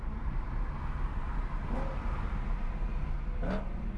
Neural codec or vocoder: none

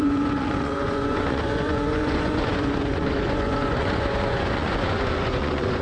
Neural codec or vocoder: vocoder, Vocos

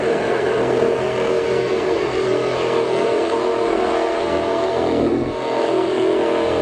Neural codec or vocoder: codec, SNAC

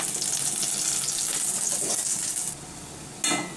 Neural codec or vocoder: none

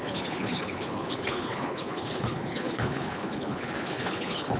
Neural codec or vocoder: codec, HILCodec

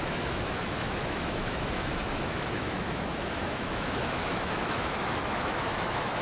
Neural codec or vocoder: autoencoder, DAC-VAE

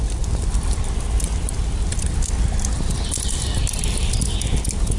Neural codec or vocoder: none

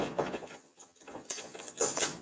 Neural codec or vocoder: vocoder, Vocos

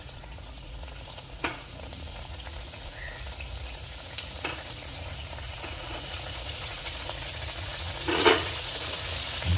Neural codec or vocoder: vocoder, Vocos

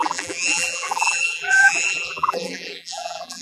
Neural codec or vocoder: vocoder, BigVGAN v2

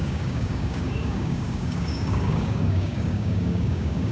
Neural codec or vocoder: codec, DAC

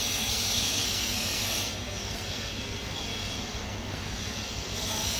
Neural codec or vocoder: codec, SNAC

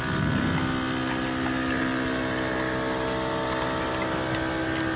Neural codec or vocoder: none